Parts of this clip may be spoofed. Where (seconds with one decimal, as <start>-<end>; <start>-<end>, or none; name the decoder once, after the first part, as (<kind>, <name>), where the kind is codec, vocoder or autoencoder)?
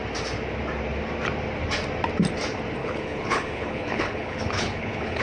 2.8-5.2 (codec, HILCodec)